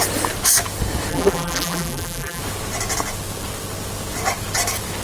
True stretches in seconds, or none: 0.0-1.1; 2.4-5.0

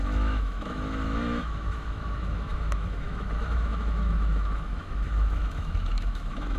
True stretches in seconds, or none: none

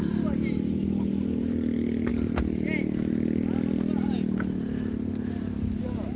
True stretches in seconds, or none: 0.0-6.2

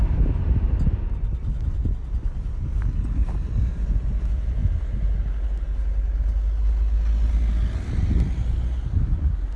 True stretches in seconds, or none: 0.0-9.6

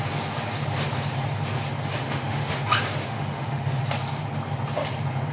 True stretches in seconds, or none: 0.0-2.0; 2.5-3.0; 3.8-5.3

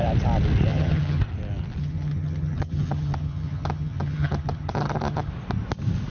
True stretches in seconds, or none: 0.0-0.7; 1.2-1.8; 5.3-6.1

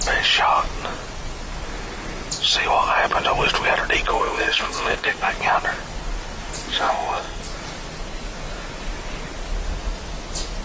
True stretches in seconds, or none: 0.0-4.1; 5.3-6.7; 7.4-10.6

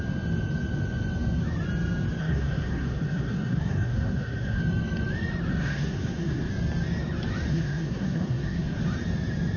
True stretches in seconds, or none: 0.0-2.2; 4.6-5.5; 6.5-7.5; 8.8-9.6